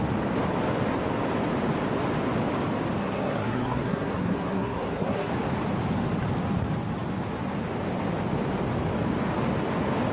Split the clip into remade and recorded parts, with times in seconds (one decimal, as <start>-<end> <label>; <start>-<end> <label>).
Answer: 0.0-3.0 recorded; 3.0-5.3 remade; 5.3-10.1 recorded